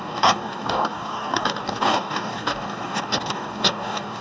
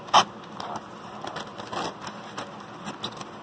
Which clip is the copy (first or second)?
first